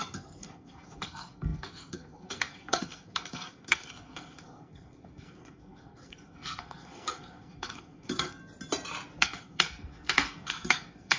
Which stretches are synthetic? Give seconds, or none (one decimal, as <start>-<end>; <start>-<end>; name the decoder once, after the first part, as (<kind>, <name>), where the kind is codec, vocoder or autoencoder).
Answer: 0.0-8.4 (codec, SNAC); 9.2-11.2

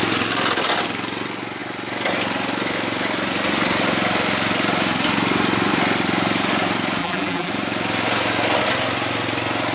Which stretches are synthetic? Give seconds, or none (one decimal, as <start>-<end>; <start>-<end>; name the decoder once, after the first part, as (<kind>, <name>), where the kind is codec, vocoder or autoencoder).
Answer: 7.0-7.5 (vocoder, BigVGAN v2)

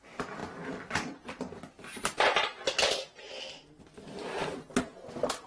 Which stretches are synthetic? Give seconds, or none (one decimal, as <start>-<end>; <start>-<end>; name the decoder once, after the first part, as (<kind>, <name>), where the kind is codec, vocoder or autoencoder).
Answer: none